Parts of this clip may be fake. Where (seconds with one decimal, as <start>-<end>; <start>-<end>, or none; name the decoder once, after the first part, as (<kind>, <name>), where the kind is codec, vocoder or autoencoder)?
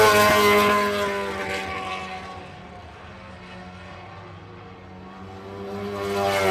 none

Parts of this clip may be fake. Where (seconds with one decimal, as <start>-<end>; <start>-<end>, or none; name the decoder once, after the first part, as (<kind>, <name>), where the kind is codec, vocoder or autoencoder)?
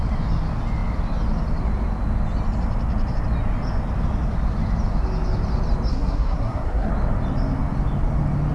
5.9-6.9 (codec, SNAC)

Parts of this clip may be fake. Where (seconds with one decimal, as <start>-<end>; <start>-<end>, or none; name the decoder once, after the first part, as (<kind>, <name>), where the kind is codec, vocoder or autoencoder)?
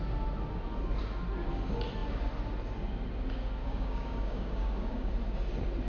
3.6-5.1 (codec, DAC)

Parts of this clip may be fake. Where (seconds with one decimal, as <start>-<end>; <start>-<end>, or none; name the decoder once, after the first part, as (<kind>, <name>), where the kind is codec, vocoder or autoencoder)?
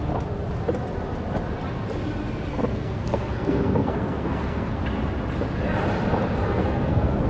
2.5-4.8 (codec, SNAC); 6.4-7.3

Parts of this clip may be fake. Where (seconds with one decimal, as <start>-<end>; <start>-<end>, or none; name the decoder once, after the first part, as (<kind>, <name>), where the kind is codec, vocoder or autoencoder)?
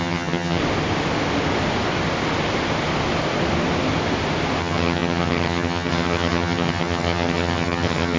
0.0-0.6 (vocoder, HiFi-GAN); 4.6-8.2